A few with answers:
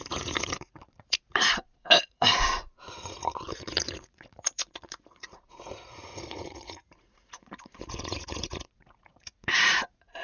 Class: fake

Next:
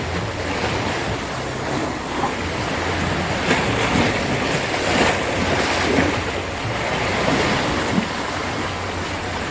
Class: real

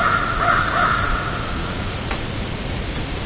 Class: fake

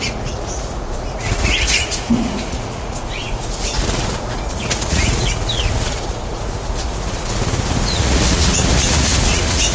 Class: fake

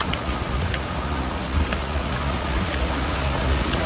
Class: fake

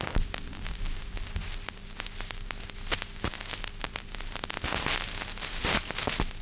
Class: real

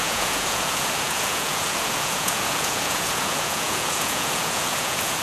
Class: fake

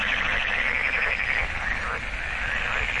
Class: real